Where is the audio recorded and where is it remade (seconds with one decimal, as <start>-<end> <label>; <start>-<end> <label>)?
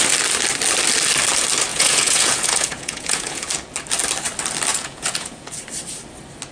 0.0-1.7 recorded; 1.7-3.5 remade; 3.5-4.7 recorded; 4.7-5.6 remade; 5.6-6.5 recorded